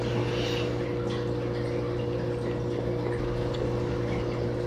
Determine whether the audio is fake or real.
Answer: real